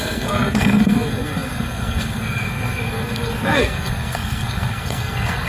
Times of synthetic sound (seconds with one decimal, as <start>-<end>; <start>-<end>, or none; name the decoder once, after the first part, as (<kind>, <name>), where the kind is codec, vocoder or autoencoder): 0.0-5.5 (codec, SNAC)